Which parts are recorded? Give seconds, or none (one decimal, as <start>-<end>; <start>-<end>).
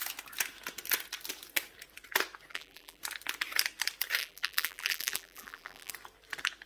0.0-2.5; 3.0-4.2; 5.9-6.7